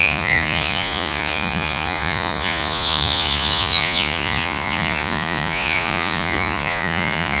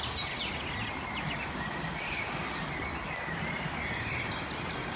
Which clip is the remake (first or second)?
first